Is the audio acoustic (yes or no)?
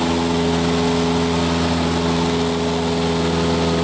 yes